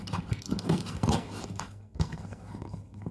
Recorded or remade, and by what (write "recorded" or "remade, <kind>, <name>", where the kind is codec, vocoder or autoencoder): remade, codec, SNAC